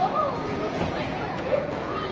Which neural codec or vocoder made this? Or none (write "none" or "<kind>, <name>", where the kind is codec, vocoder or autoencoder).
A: vocoder, Vocos